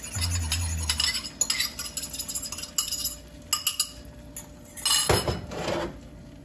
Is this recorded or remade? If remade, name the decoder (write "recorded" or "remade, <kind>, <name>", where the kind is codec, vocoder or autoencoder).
recorded